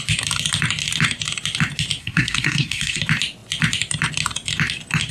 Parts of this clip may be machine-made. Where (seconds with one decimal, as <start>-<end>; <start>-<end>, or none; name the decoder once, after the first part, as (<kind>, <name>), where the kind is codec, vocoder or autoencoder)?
2.0-3.0 (codec, SNAC)